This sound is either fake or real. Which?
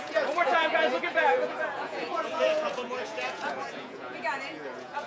fake